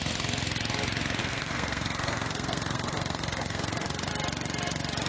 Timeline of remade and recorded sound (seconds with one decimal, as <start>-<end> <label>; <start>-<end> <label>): 0.0-1.2 recorded; 1.2-4.1 remade; 4.1-5.1 recorded